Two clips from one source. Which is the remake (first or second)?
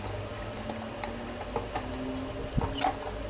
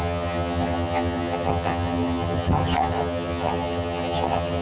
second